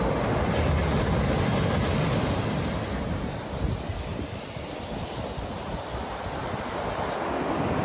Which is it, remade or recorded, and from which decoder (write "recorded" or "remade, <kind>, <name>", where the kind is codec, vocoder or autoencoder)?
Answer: recorded